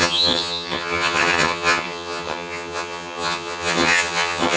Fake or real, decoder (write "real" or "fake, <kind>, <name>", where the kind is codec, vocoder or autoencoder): fake, vocoder, HiFi-GAN